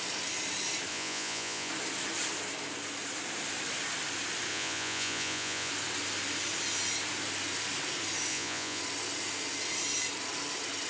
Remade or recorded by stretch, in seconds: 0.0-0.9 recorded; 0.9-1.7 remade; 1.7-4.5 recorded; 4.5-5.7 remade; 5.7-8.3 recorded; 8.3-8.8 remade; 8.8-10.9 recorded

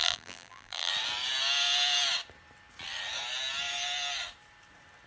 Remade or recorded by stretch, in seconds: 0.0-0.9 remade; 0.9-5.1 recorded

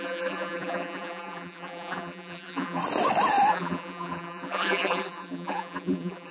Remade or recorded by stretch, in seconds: 0.0-2.8 remade; 2.8-3.5 recorded; 3.5-6.3 remade

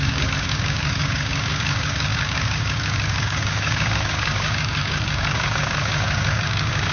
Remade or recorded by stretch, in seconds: 0.0-6.9 remade